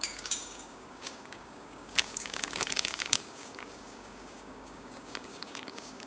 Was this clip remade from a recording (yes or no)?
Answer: yes